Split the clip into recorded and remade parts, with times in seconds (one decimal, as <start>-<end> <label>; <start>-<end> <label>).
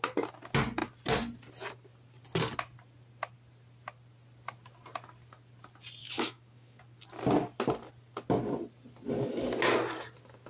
0.0-6.0 recorded; 6.0-6.8 remade; 6.8-10.5 recorded